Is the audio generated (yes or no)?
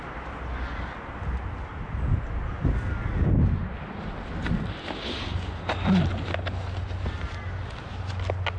no